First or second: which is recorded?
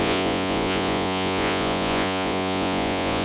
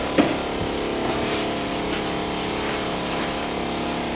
second